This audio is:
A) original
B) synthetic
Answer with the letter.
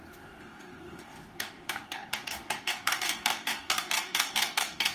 B